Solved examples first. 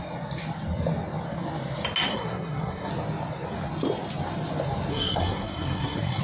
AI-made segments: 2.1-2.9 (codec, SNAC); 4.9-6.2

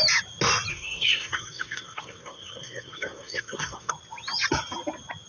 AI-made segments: 0.7-3.9 (codec, SNAC)

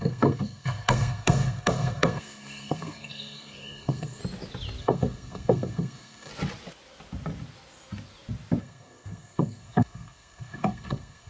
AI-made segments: 0.0-4.2 (codec, SNAC); 4.8-6.3; 8.6-11.3

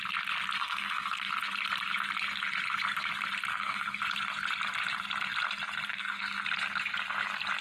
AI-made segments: 0.6-1.3 (codec, SNAC); 3.5-4.0; 5.9-6.4

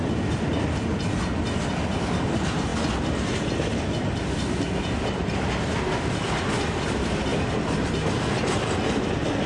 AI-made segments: none

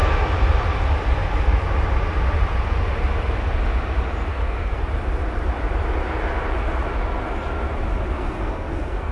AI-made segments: 4.3-4.8 (codec, SNAC); 8.1-9.1

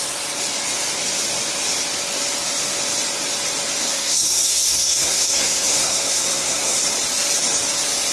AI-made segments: 3.8-6.8 (codec, SNAC)